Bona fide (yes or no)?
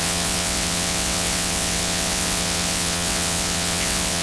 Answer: no